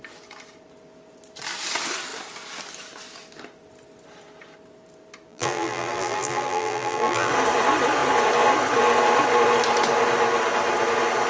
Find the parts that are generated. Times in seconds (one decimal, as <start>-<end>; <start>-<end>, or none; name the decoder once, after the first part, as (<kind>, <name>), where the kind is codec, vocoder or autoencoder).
5.3-7.3 (vocoder, BigVGAN v2)